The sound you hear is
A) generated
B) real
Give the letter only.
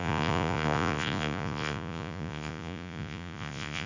A